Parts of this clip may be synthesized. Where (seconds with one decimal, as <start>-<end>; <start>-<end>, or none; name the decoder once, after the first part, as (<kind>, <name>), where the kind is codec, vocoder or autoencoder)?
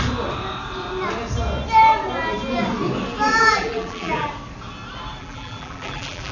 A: 3.3-4.3 (vocoder, BigVGAN v2); 5.2-6.3